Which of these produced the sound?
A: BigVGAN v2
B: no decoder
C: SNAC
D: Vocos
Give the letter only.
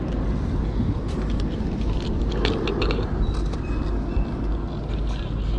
B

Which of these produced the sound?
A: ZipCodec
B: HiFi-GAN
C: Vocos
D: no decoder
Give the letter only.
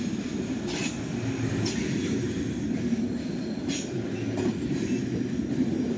D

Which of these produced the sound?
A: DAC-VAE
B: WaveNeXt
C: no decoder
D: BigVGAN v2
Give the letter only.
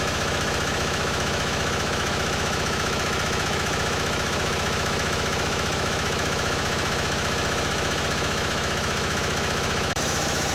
A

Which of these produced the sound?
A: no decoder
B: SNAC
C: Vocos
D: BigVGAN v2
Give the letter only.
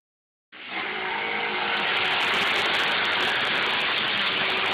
A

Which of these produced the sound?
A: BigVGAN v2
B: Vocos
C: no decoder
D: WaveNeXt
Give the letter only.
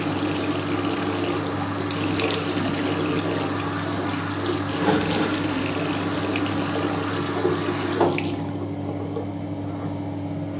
C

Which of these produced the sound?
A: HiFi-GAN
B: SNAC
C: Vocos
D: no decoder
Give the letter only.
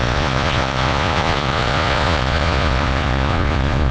C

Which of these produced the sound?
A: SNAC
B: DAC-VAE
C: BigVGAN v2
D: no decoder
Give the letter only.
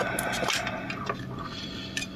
D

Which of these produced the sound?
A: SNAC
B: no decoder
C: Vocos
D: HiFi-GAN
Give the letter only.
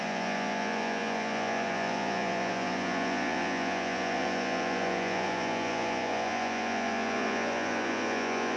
C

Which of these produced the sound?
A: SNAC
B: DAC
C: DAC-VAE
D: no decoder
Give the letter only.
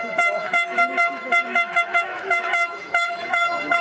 C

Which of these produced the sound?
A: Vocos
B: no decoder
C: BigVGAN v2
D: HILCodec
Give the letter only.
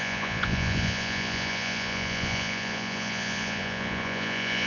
A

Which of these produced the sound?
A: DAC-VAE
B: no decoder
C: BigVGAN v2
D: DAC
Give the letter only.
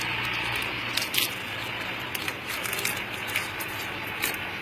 B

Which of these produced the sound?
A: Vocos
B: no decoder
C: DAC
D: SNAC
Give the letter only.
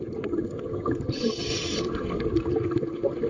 B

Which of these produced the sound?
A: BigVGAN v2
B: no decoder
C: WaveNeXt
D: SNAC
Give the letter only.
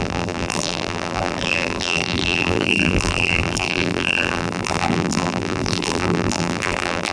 A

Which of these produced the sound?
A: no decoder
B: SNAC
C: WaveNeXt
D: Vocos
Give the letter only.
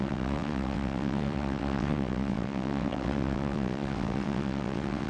C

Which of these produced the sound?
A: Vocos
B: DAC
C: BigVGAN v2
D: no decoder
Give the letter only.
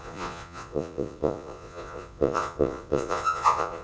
A